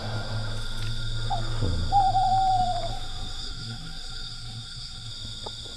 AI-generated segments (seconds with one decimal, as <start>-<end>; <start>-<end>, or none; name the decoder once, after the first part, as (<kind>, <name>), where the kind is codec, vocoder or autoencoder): 2.9-5.1 (codec, SNAC)